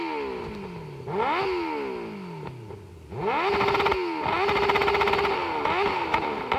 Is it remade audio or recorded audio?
recorded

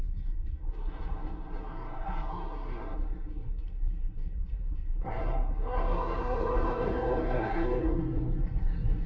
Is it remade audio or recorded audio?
remade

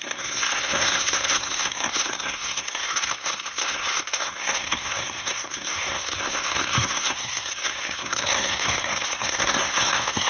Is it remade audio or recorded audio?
remade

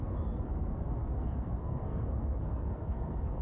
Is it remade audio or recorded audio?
remade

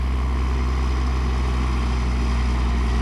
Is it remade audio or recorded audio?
recorded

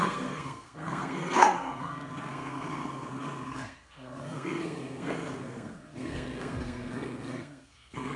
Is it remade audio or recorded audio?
remade